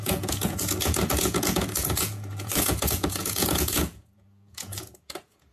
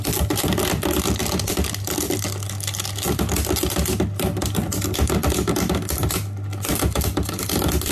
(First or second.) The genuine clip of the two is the second